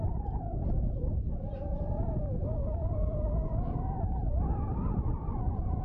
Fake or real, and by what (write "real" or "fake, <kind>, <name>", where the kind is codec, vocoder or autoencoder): real